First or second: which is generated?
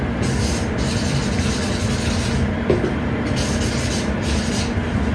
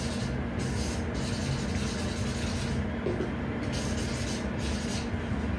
first